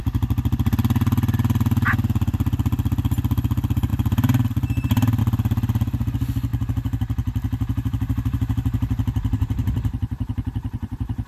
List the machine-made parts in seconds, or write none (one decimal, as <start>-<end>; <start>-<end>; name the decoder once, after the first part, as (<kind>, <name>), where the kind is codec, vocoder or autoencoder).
3.9-5.2 (vocoder, BigVGAN v2); 6.5-11.3